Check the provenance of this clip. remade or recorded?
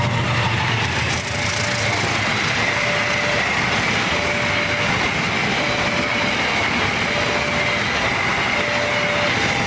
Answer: recorded